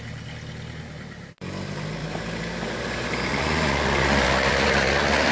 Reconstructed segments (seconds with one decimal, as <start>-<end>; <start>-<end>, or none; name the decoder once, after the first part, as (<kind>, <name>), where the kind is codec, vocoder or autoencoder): 3.3-5.3 (vocoder, Vocos)